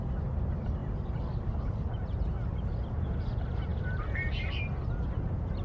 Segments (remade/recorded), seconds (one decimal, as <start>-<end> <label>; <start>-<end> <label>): 0.0-5.6 recorded